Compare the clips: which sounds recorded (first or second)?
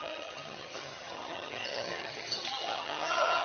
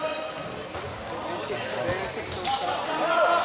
second